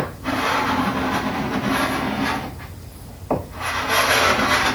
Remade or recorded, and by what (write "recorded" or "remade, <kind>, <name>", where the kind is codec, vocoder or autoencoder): recorded